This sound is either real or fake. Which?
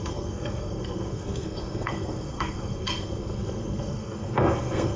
fake